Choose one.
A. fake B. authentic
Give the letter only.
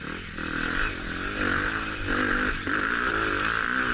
B